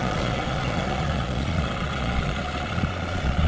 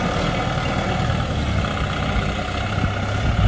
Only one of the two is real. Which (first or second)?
second